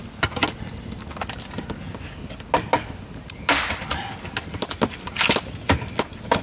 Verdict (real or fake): real